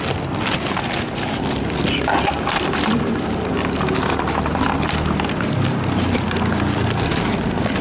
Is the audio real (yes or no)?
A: yes